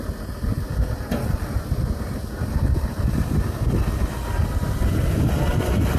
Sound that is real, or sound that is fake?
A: real